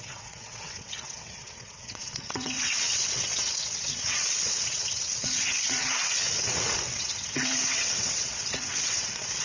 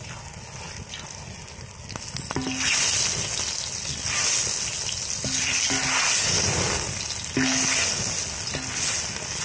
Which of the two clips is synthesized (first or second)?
first